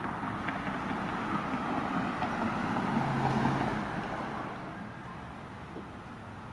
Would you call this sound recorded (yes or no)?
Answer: yes